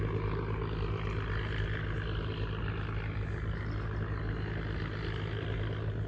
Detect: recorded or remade recorded